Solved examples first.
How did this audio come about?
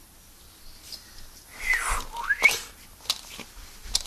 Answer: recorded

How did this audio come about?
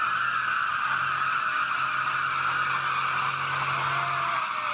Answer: recorded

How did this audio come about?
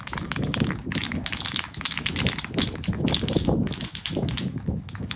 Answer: remade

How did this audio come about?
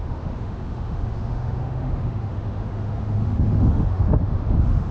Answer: remade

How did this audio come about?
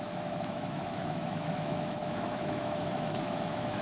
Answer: remade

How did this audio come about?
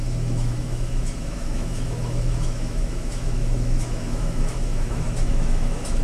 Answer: remade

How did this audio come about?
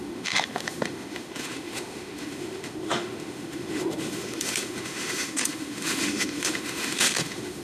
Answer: remade